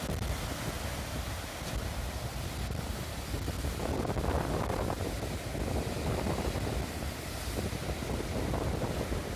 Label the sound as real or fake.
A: fake